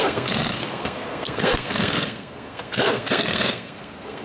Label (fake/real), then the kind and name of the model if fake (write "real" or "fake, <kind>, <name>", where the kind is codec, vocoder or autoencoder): fake, codec, SNAC